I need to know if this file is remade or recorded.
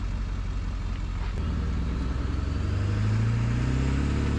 recorded